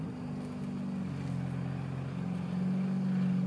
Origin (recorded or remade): recorded